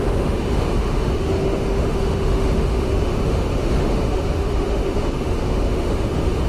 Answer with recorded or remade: remade